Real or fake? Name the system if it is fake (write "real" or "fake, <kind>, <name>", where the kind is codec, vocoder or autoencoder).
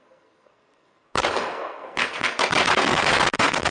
fake, codec, SNAC